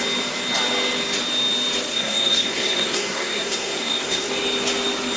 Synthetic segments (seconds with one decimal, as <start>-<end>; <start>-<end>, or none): 1.9-4.3